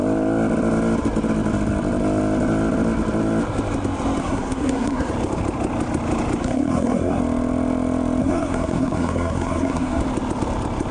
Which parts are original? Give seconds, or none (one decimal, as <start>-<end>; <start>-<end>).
0.0-4.2; 5.1-6.4; 7.2-8.2; 10.0-10.9